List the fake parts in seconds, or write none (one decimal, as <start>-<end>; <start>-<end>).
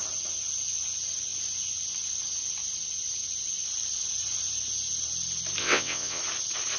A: 5.6-6.2